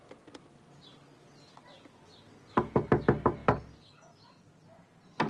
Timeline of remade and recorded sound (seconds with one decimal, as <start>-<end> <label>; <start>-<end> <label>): 0.0-5.3 recorded